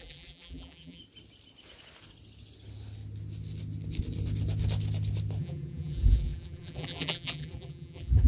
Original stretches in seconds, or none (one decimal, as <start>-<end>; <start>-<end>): 1.0-5.4